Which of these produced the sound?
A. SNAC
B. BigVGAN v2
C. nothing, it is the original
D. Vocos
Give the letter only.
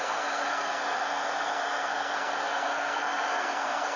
A